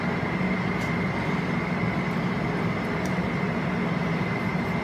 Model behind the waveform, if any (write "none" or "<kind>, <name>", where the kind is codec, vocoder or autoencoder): none